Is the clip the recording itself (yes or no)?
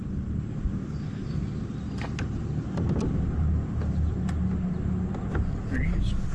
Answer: yes